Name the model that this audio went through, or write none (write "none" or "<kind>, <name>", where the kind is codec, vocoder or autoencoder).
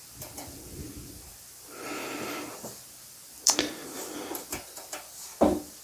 none